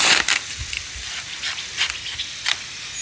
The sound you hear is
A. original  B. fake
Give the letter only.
A